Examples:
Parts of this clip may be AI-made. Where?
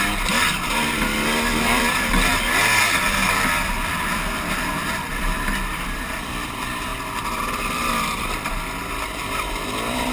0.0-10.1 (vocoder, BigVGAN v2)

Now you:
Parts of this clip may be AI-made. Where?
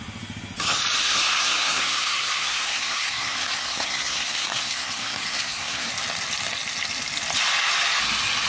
1.0-5.9 (codec, SNAC)